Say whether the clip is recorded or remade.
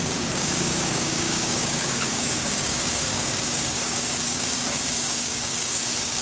remade